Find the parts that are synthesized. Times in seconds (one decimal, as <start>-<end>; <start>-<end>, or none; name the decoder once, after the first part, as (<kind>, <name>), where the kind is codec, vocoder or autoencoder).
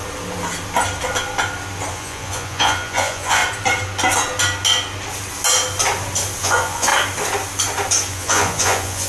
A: 1.9-3.4 (vocoder, Vocos); 6.4-6.9; 8.1-9.1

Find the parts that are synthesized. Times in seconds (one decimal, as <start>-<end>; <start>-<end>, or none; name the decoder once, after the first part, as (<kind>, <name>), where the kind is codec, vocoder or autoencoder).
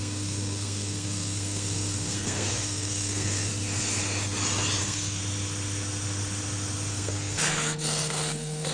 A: 0.0-3.5 (codec, SNAC); 4.8-5.2; 6.9-8.7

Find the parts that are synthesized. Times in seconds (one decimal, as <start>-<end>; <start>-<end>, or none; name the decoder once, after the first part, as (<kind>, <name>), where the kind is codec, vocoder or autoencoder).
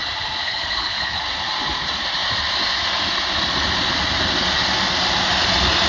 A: 0.4-1.2 (codec, HILCodec)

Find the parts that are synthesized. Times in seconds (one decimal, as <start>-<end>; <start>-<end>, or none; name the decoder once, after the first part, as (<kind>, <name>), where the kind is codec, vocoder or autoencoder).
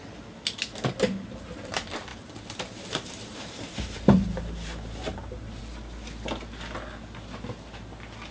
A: 2.1-5.6 (vocoder, BigVGAN v2)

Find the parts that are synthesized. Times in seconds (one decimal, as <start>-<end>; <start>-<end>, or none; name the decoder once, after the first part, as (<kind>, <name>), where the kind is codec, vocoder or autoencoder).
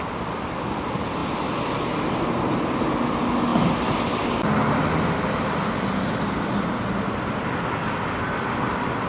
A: none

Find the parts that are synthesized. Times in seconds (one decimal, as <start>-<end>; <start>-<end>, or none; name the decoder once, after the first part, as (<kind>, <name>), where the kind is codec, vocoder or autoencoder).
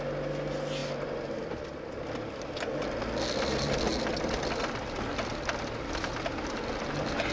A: none